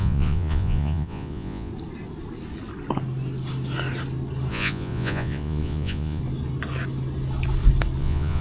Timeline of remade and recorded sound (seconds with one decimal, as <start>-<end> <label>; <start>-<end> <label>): 0.0-1.7 remade; 1.7-4.5 recorded; 4.5-6.2 remade; 6.2-8.0 recorded; 8.0-8.4 remade